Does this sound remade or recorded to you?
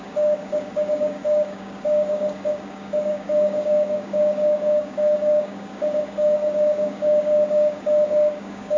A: remade